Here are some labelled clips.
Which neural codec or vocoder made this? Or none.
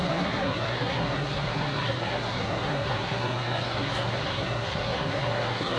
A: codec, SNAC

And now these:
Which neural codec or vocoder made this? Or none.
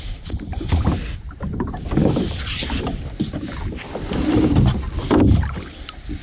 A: none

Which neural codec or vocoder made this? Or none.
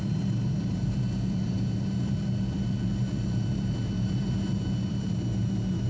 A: vocoder, BigVGAN v2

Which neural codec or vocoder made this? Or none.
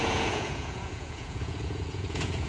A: vocoder, Vocos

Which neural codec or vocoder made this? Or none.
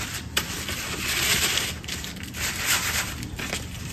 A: vocoder, BigVGAN v2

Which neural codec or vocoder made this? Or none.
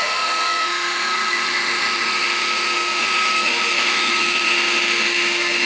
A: autoencoder, DAC-VAE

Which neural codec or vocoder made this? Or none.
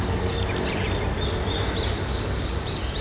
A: none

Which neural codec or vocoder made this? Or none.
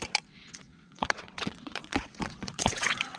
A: vocoder, WaveNeXt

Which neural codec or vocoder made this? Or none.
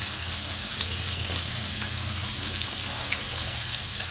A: codec, SNAC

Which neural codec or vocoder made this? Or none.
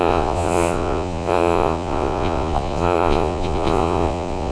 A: vocoder, Vocos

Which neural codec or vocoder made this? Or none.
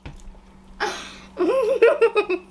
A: none